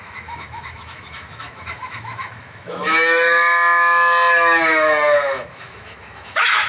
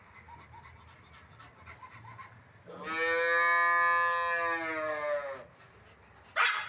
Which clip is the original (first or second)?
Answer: second